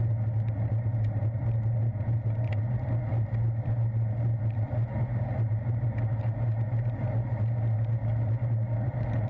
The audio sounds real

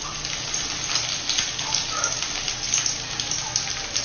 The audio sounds real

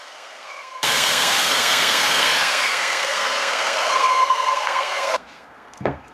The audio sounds fake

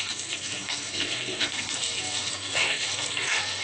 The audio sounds fake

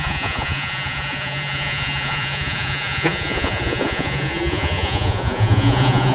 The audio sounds fake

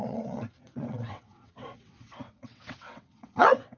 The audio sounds fake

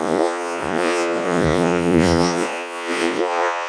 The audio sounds fake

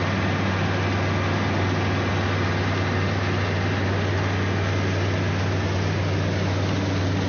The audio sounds real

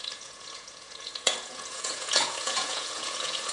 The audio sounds fake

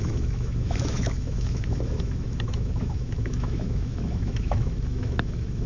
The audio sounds fake